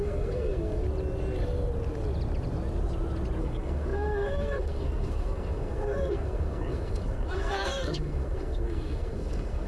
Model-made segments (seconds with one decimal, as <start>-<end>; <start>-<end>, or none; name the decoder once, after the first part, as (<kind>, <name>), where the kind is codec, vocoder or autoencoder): 0.0-0.8 (codec, SNAC); 3.4-9.7